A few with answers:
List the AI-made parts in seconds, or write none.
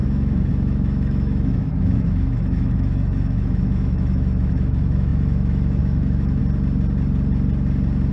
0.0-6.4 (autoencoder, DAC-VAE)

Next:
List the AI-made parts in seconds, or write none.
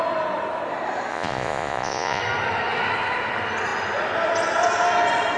1.1-2.2 (vocoder, Vocos)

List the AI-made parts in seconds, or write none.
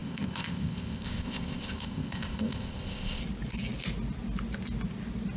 0.0-3.2 (codec, ZipCodec)